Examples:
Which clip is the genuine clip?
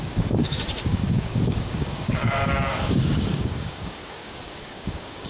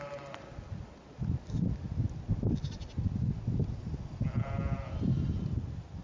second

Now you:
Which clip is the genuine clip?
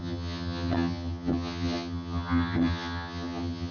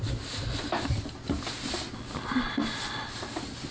second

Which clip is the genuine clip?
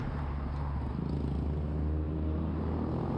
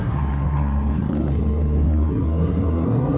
first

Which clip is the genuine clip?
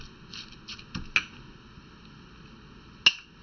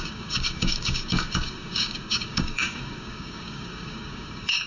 first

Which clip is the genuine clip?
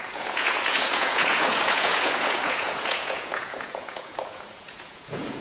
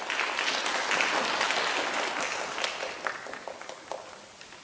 second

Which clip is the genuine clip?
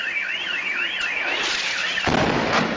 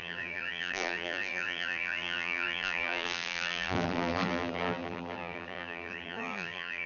first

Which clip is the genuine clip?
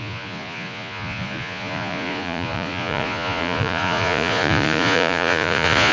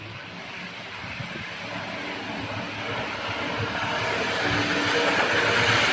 second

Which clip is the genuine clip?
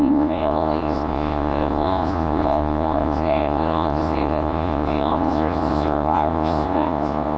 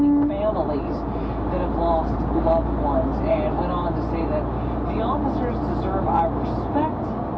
second